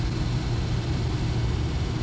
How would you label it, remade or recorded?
recorded